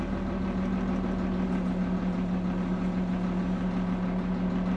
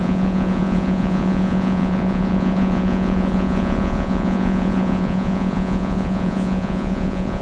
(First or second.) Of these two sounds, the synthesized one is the second